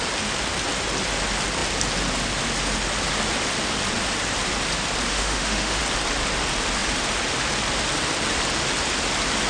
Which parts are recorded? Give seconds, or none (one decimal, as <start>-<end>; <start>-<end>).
0.0-5.1; 5.8-9.5